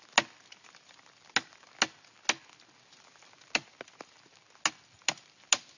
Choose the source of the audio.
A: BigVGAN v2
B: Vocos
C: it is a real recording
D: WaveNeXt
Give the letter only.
C